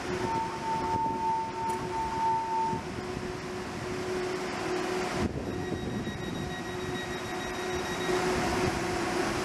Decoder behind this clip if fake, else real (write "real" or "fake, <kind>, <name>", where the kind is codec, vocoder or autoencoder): real